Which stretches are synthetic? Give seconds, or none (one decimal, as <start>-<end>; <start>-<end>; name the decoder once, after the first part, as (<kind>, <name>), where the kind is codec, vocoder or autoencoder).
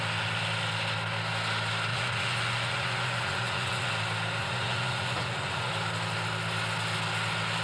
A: 1.9-3.9 (vocoder, Vocos); 4.4-5.7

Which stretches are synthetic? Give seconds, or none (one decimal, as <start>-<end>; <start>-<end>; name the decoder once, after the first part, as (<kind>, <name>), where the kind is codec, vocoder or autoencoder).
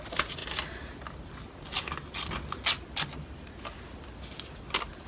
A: none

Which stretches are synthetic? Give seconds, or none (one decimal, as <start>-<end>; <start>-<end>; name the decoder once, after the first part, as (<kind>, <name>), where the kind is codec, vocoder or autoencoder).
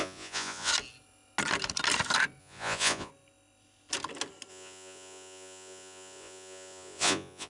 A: 0.0-0.7 (vocoder, Vocos); 2.4-3.1; 4.5-7.5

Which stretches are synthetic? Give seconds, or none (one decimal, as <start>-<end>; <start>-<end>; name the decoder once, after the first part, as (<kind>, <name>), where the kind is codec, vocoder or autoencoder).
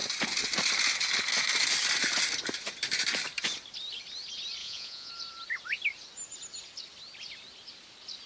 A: 4.6-5.1 (vocoder, Vocos)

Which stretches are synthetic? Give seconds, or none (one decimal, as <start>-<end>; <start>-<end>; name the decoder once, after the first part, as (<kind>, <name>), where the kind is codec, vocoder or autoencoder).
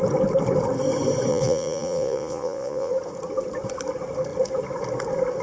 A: 1.3-2.9 (vocoder, Vocos)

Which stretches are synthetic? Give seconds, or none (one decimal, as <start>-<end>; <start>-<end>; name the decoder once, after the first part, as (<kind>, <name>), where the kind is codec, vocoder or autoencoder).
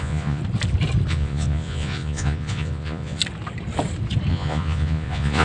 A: 0.0-0.4 (vocoder, Vocos); 1.1-3.2; 4.3-5.4